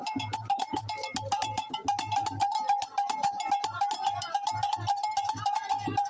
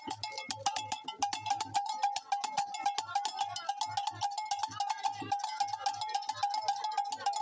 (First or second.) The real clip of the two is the second